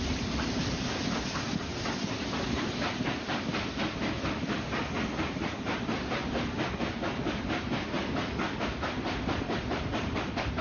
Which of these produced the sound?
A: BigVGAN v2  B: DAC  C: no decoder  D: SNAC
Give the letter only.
A